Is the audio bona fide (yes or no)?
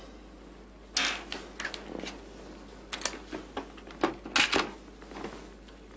yes